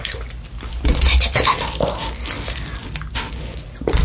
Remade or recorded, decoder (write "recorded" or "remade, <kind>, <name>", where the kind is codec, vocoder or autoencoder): recorded